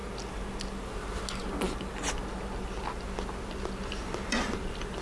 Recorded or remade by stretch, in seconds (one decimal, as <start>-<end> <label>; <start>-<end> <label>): 0.0-4.0 recorded; 4.0-5.0 remade